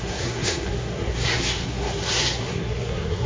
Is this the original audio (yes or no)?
no